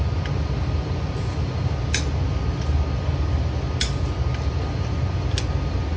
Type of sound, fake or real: real